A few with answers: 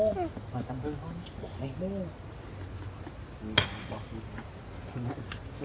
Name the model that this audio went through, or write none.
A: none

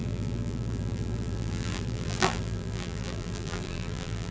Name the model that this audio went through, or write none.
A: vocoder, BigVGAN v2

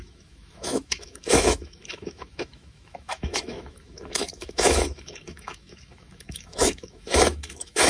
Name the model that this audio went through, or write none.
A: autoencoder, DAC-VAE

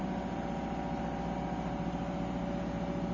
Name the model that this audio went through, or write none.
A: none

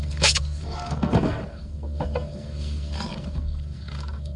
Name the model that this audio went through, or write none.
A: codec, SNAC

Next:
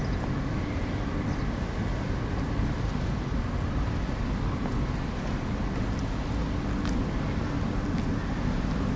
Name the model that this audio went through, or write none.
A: none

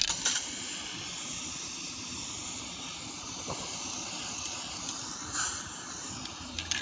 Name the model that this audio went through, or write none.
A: none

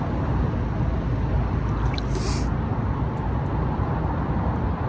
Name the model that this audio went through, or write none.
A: none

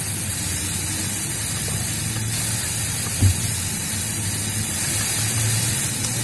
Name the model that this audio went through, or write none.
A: none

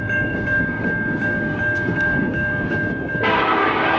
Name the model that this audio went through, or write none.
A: codec, DAC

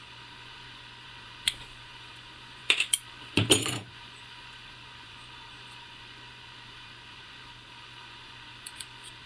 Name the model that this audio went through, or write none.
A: vocoder, Vocos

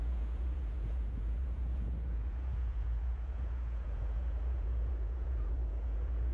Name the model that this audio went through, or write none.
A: vocoder, Vocos